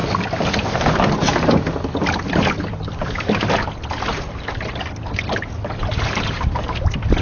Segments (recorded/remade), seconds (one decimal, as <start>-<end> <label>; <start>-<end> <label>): 0.0-7.2 recorded